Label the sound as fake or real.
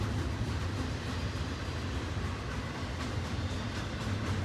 real